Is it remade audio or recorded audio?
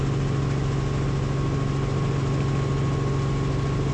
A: recorded